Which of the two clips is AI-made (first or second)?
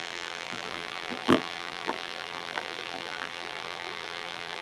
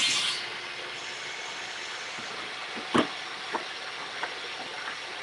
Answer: first